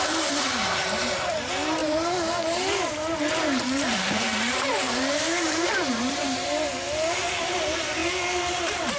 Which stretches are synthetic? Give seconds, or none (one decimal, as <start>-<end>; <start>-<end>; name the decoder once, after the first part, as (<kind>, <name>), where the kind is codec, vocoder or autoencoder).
0.0-8.0 (vocoder, BigVGAN v2); 8.6-9.0